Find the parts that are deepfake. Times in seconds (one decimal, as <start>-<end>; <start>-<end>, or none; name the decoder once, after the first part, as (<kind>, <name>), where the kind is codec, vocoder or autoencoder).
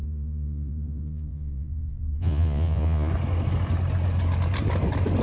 0.0-3.1 (vocoder, Vocos)